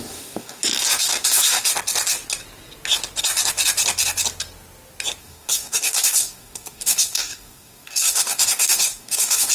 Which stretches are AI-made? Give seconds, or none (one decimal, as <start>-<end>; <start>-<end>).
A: 0.0-0.6; 1.2-1.7; 5.2-9.5